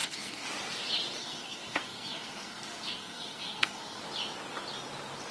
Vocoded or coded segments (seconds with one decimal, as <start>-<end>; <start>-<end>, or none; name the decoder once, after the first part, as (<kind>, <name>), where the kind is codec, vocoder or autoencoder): 0.0-0.5 (codec, SNAC); 1.2-4.0